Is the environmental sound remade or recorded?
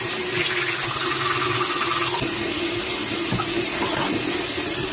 recorded